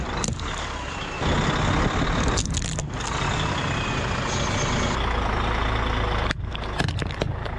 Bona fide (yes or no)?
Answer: yes